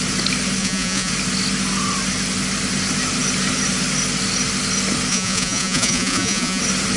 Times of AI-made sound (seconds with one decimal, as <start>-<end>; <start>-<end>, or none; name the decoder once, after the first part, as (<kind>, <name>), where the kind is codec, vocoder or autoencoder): 0.6-1.1 (vocoder, Vocos); 5.1-6.6